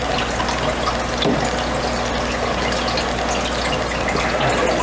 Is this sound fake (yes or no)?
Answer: no